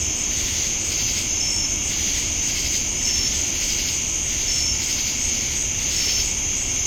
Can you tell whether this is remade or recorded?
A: recorded